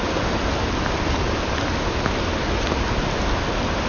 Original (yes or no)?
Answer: yes